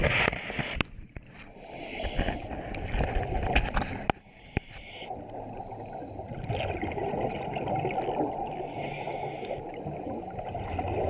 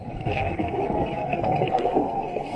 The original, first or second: first